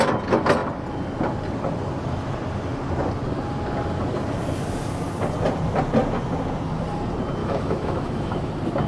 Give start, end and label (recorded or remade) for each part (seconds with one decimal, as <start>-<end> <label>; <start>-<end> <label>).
0.0-7.4 recorded; 7.4-8.5 remade; 8.5-8.9 recorded